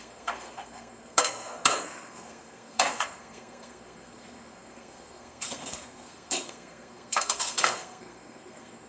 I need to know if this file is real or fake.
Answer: fake